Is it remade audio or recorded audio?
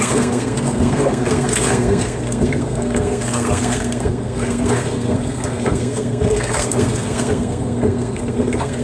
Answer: remade